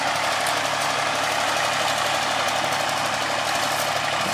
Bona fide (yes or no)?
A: yes